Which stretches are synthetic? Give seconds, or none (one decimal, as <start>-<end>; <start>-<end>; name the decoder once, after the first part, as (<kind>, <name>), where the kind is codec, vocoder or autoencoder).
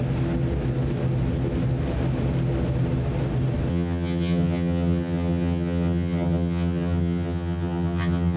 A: 3.7-8.4 (vocoder, HiFi-GAN)